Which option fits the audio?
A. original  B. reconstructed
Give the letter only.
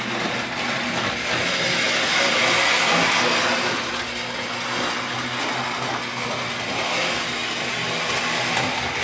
A